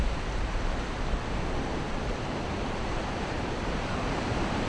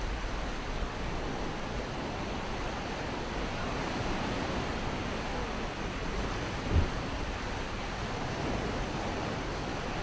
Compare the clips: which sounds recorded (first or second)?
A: second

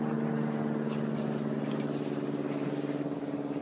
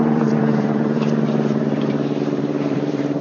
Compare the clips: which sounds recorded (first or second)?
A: first